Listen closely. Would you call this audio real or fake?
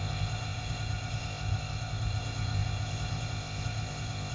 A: fake